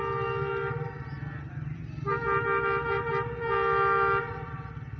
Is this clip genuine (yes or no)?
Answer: yes